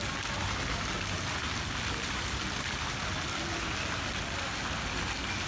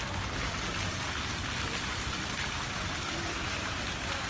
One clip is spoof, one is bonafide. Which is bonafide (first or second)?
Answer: first